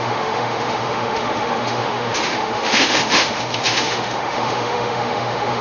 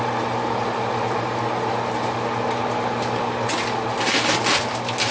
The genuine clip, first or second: second